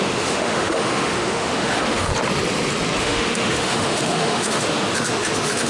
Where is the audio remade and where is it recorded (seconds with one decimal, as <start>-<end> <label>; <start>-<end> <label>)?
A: 0.0-2.1 remade; 2.1-3.0 recorded; 3.0-5.7 remade